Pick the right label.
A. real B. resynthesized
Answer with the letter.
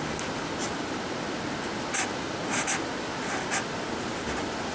A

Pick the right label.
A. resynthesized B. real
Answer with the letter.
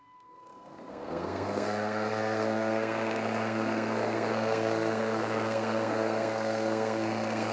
A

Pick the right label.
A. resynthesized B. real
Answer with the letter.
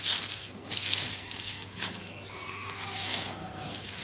A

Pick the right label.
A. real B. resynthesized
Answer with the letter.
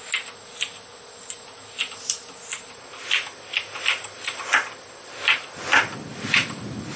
A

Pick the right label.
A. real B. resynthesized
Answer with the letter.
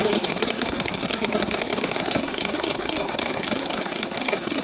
B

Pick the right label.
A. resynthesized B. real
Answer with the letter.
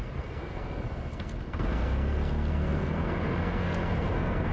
A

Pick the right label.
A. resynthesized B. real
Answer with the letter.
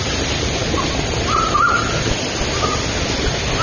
B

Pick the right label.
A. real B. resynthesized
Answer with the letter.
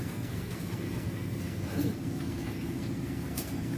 B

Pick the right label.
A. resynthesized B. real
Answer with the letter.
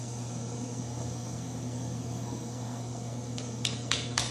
A